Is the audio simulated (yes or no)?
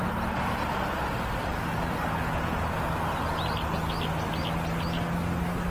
no